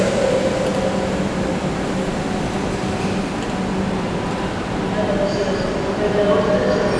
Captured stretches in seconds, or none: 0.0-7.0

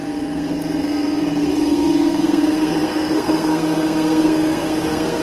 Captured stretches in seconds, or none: none

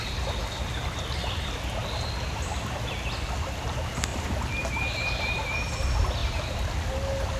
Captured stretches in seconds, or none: 0.0-4.1; 4.7-7.4

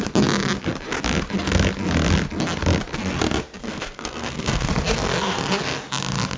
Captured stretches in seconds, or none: 0.0-3.6; 4.7-6.4

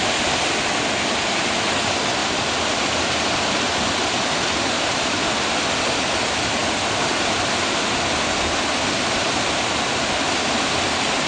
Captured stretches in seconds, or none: 0.0-11.3

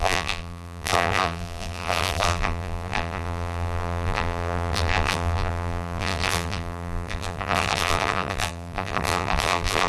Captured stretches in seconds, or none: none

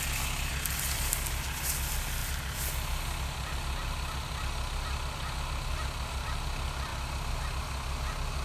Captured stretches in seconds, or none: 0.0-8.4

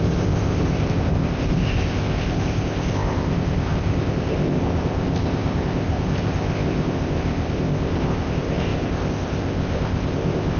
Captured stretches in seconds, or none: none